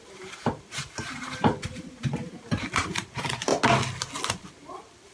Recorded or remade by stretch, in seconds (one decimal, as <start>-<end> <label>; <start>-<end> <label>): 0.0-3.5 remade; 3.5-4.3 recorded; 4.3-5.1 remade